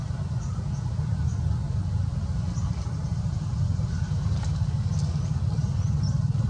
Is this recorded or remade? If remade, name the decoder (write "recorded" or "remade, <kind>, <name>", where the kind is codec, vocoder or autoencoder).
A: recorded